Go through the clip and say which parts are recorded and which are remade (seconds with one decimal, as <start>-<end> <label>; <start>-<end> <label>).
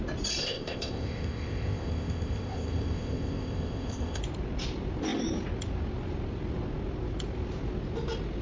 0.0-0.4 recorded; 0.4-4.2 remade; 4.2-8.4 recorded